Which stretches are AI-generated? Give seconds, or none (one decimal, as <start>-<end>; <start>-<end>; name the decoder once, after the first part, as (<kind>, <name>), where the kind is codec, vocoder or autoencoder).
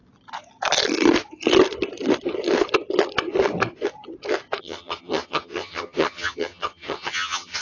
4.6-7.6 (vocoder, HiFi-GAN)